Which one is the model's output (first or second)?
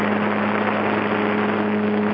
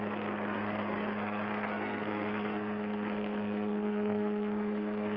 second